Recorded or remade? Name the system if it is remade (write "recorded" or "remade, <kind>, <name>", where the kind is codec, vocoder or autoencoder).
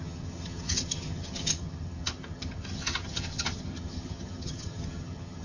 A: remade, vocoder, HiFi-GAN